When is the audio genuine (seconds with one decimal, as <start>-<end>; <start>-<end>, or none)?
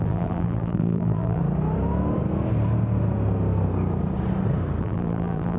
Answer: 1.4-4.8